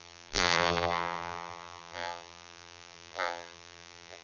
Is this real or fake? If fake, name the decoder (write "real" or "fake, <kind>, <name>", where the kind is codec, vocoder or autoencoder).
fake, vocoder, BigVGAN v2